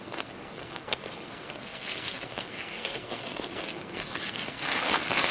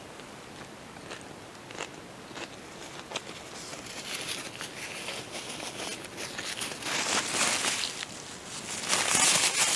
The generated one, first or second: first